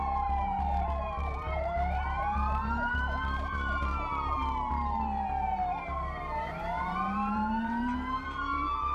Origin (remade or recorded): remade